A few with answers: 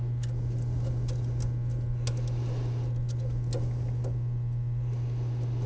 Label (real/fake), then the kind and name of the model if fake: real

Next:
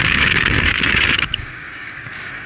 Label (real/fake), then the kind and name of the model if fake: fake, codec, DAC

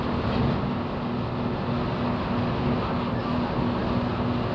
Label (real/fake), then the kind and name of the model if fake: real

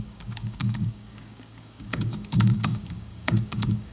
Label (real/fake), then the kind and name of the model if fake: fake, codec, DAC